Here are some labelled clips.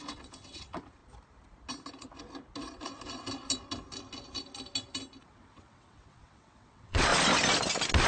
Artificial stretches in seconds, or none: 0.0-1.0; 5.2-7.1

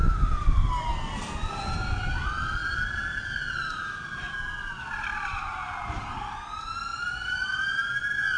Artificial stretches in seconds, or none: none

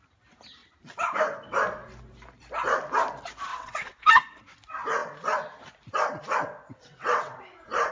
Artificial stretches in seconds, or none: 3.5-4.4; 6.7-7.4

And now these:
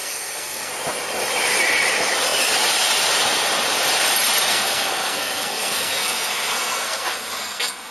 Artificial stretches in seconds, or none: 0.0-0.7; 4.5-7.9

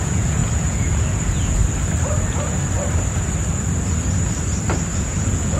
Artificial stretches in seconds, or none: 0.0-1.6; 5.0-5.6

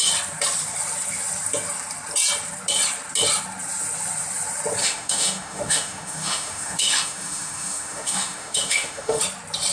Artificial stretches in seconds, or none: 4.8-9.2